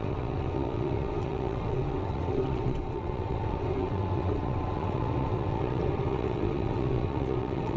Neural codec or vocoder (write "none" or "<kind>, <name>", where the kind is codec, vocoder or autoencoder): vocoder, WaveNeXt